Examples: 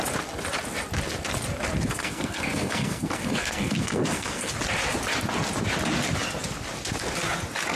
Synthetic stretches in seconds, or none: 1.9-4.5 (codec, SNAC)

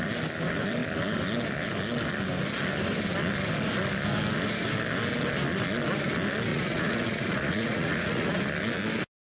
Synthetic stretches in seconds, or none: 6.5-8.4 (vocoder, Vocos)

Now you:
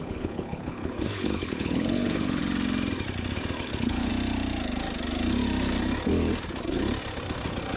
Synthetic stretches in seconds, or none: 0.0-2.4 (codec, HILCodec); 3.6-4.1